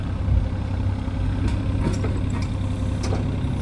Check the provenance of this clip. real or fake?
real